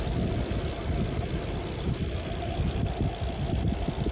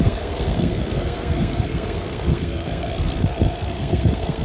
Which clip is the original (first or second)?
first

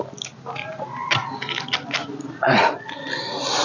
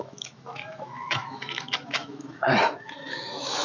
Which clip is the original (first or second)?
first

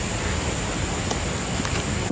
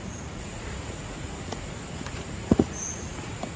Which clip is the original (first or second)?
first